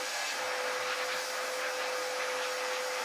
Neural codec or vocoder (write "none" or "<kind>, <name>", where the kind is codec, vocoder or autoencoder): none